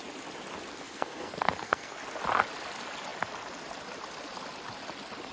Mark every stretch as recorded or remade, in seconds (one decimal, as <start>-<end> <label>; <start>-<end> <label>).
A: 0.0-0.7 recorded; 0.7-2.0 remade; 2.0-5.3 recorded